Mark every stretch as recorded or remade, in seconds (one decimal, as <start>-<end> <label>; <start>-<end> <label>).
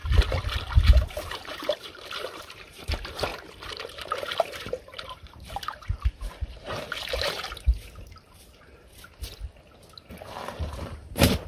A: 0.0-1.1 recorded; 1.1-8.9 remade; 8.9-10.5 recorded; 10.5-11.5 remade